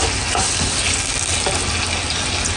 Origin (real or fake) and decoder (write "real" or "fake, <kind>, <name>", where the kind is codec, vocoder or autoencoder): real